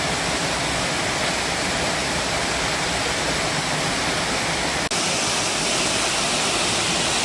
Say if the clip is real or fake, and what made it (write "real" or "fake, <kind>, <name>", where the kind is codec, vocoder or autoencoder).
real